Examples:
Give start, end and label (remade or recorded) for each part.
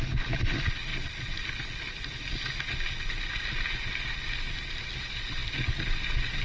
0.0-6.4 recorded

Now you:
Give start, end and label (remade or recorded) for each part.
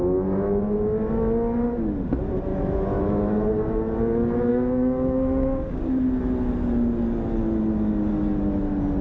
0.0-4.5 recorded; 4.5-5.9 remade; 5.9-9.0 recorded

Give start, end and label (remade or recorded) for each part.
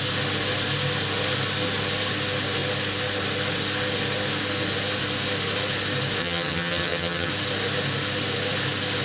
0.0-6.2 recorded; 6.2-7.3 remade; 7.3-9.0 recorded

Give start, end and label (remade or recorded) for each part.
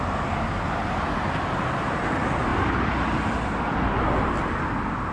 0.0-5.1 recorded